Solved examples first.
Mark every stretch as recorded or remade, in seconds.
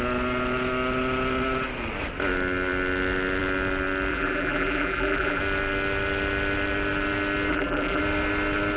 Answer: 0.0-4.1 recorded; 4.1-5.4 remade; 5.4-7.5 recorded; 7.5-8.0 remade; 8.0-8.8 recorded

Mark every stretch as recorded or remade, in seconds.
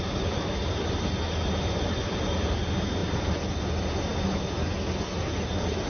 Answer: 0.0-5.9 recorded